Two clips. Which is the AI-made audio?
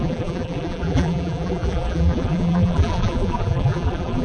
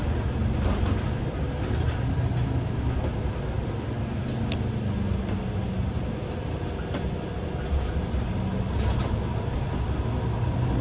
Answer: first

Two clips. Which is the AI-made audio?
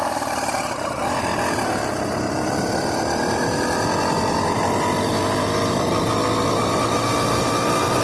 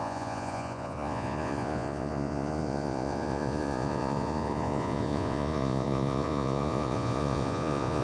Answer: second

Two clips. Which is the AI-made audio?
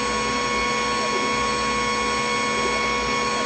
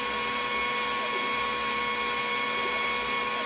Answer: second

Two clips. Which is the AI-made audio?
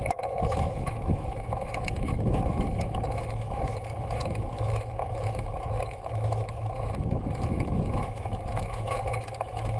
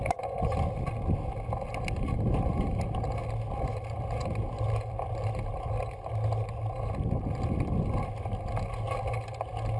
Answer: first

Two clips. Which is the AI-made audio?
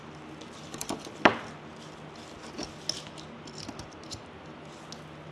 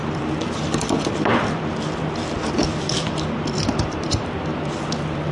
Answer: second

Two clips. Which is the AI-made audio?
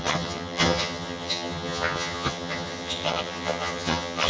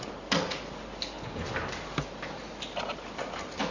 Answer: first